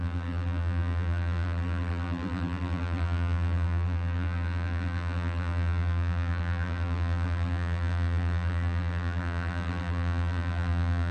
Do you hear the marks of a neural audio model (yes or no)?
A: yes